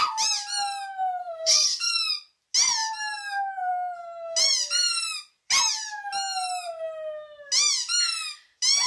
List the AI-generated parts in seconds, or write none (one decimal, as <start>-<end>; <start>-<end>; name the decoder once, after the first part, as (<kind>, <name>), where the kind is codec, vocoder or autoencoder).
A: 1.2-1.9 (codec, SNAC)